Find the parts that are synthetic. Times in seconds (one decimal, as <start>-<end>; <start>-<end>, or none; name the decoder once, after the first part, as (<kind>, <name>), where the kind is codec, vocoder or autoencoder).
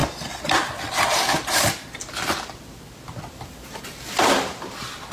none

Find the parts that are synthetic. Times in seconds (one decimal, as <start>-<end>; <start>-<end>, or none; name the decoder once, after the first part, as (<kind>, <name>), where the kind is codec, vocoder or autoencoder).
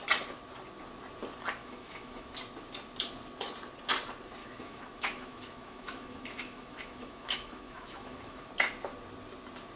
1.6-2.3 (autoencoder, DAC-VAE); 4.4-8.5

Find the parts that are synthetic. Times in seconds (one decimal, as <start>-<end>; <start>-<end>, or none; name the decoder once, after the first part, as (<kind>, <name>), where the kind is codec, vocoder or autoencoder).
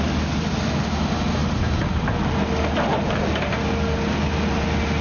none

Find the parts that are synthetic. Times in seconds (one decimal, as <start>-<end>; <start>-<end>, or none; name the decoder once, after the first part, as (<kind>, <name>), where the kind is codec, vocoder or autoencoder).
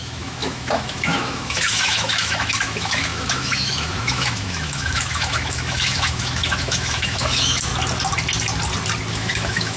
0.0-7.7 (autoencoder, DAC-VAE); 9.1-9.8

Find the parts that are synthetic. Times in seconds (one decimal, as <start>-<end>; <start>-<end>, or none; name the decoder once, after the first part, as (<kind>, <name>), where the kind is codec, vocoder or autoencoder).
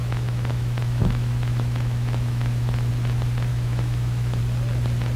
0.0-2.9 (autoencoder, DAC-VAE); 3.5-4.4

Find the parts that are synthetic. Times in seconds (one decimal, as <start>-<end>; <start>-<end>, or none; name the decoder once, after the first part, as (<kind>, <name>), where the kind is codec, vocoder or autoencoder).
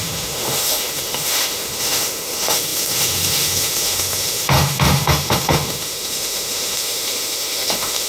0.0-8.1 (autoencoder, DAC-VAE)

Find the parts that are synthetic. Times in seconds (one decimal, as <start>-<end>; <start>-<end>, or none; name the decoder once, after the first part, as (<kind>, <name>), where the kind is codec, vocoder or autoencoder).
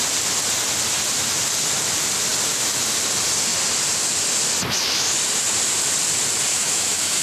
6.5-7.2 (autoencoder, DAC-VAE)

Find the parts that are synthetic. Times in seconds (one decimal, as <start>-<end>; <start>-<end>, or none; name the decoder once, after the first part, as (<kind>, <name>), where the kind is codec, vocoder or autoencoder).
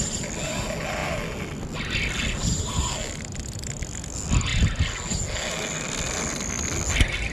none